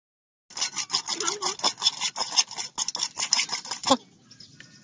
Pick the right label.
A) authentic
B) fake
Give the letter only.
A